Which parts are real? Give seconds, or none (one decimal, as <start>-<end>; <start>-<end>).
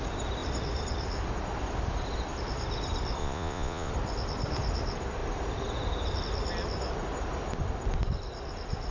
0.0-3.2; 3.9-8.9